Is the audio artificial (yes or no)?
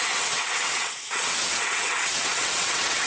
yes